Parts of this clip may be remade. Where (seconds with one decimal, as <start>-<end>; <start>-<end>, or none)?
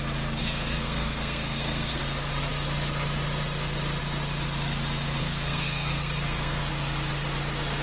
0.4-2.0; 5.2-6.7